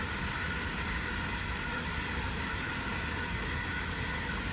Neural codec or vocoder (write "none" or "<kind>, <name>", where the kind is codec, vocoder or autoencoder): none